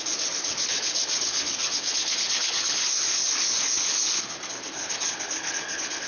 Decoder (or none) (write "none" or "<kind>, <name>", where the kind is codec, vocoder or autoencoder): codec, HILCodec